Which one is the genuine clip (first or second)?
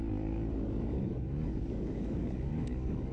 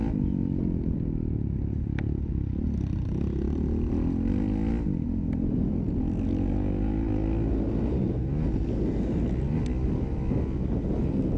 second